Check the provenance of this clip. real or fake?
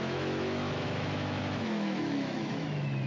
fake